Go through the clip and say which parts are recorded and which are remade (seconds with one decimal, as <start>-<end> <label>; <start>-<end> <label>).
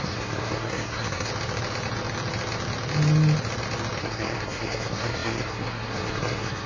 0.0-1.3 remade; 1.3-4.0 recorded; 4.0-6.7 remade